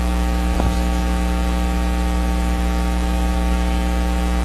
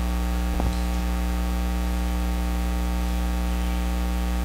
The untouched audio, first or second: second